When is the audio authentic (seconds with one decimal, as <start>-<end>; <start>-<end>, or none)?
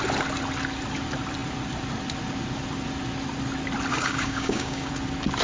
0.0-3.9; 4.9-5.4